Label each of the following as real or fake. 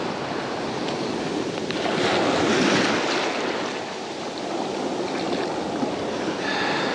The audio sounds real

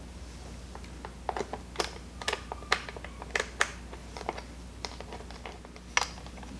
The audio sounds real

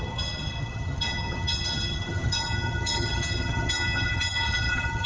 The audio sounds fake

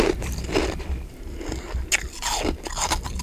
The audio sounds real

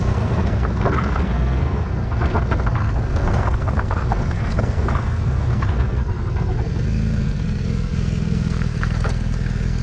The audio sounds fake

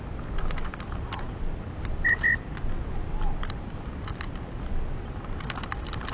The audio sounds real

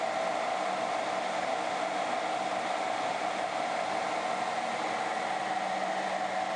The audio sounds real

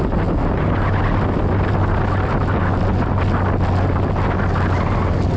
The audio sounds real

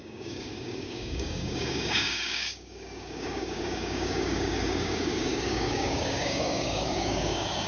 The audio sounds fake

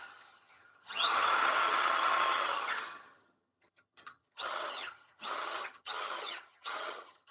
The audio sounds fake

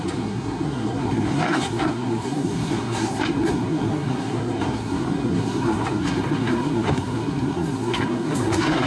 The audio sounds fake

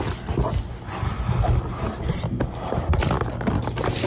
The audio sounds real